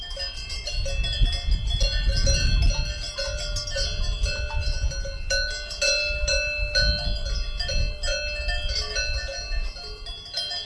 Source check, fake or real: real